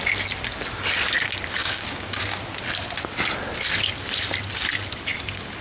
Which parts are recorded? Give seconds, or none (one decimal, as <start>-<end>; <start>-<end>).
0.0-1.6; 2.2-5.6